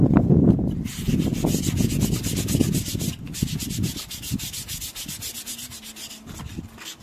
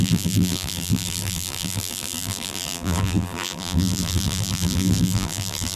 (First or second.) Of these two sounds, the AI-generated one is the second